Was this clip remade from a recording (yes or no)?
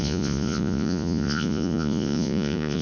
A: yes